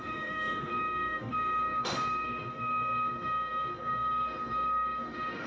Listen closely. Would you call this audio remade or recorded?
remade